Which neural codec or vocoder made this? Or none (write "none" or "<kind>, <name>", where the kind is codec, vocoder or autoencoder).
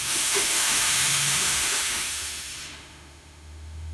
autoencoder, DAC-VAE